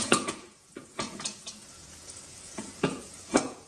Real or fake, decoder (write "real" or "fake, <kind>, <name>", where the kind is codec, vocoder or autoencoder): fake, vocoder, Vocos